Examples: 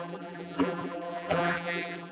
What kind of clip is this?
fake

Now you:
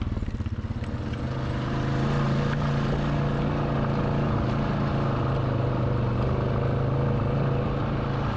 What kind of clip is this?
real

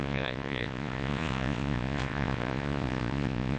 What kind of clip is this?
fake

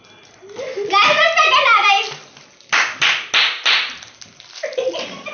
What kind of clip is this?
real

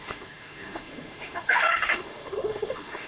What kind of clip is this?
fake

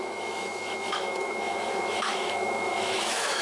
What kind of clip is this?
fake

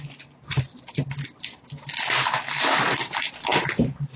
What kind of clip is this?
real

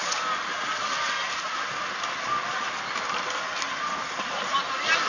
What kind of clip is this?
real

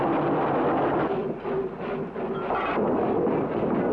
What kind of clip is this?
real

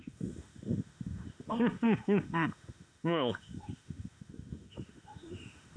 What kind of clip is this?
fake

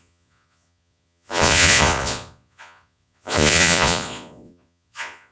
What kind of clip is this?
fake